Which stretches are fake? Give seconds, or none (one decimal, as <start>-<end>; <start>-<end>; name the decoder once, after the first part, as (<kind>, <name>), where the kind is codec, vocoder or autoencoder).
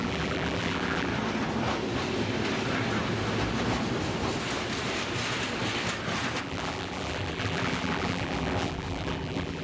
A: 0.0-1.1 (vocoder, BigVGAN v2); 6.4-9.6